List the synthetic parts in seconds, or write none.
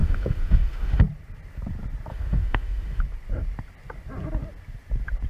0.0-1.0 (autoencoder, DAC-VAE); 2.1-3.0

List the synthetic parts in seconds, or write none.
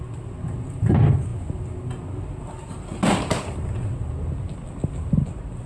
none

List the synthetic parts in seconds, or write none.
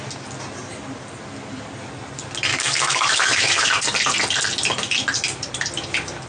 2.5-3.7 (autoencoder, DAC-VAE)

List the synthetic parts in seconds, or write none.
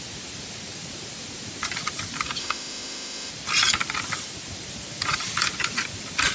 2.4-3.3 (autoencoder, DAC-VAE)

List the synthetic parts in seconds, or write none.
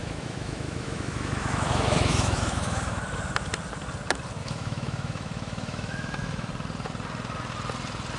0.0-3.0 (autoencoder, DAC-VAE); 4.4-6.5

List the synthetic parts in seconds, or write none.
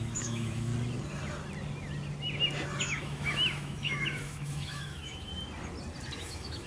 0.0-0.7 (autoencoder, DAC-VAE); 2.8-5.3; 6.2-6.7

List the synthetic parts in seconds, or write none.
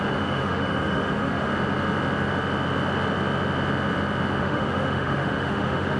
0.0-1.5 (autoencoder, DAC-VAE); 4.4-6.0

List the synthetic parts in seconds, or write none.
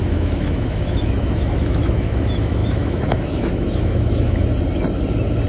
0.0-4.5 (autoencoder, DAC-VAE)